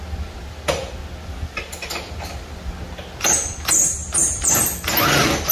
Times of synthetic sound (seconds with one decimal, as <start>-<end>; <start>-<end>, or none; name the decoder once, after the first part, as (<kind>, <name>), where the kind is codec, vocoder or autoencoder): none